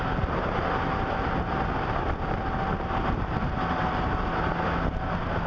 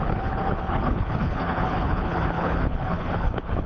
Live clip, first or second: first